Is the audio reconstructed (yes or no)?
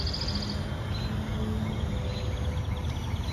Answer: no